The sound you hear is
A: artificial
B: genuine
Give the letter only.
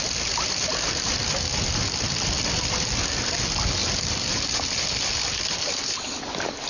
B